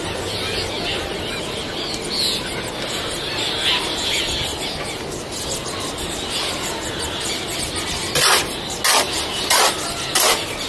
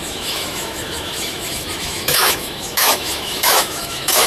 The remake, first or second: second